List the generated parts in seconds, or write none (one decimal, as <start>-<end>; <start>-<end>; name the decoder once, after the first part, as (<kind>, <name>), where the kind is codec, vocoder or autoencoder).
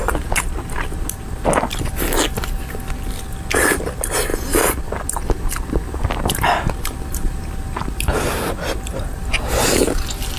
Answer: none